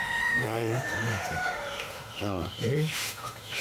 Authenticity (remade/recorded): remade